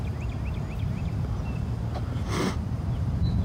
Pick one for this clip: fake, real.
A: real